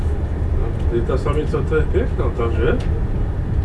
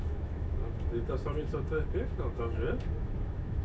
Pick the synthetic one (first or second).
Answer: second